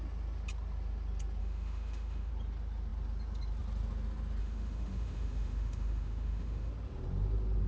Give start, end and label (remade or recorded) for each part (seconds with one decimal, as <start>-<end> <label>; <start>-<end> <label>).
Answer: 0.0-1.4 recorded; 1.4-2.3 remade; 2.3-4.4 recorded; 4.4-6.7 remade; 6.7-7.7 recorded